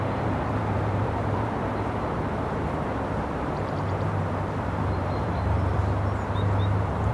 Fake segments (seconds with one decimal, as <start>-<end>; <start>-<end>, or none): 0.0-5.8